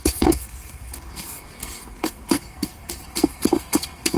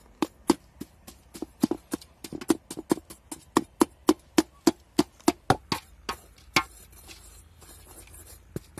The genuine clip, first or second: second